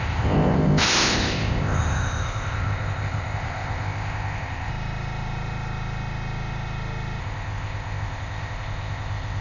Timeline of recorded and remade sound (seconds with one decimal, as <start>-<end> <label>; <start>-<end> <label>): 0.0-4.7 remade; 4.7-7.2 recorded; 7.2-9.4 remade